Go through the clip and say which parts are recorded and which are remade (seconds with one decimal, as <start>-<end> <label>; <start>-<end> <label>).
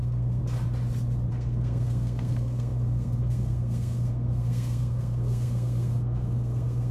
0.0-0.4 remade; 0.4-1.3 recorded; 1.3-6.9 remade